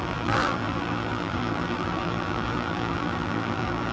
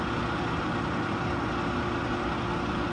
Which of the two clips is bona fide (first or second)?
second